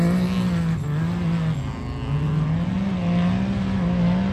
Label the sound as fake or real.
real